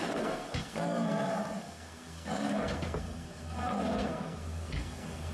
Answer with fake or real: fake